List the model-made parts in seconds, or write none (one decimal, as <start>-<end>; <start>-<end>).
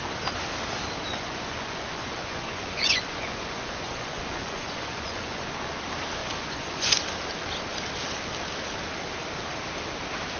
1.1-5.4; 6.2-7.0